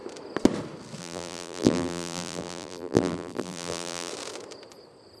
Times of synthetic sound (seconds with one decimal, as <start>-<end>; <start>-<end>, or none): 1.0-4.1